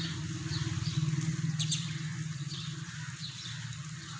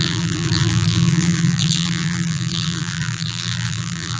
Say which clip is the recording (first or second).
first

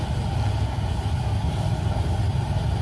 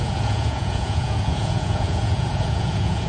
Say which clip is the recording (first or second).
first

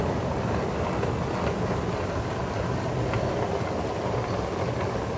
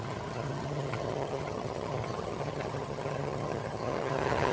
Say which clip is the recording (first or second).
first